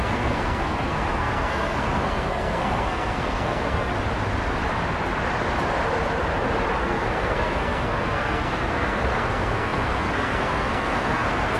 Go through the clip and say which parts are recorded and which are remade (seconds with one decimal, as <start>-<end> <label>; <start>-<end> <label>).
0.0-3.9 remade; 3.9-6.8 recorded; 6.8-11.6 remade